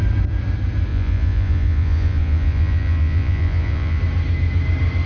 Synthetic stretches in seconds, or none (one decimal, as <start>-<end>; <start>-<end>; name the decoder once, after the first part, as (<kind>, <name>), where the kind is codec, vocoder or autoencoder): 0.9-4.0 (vocoder, Vocos)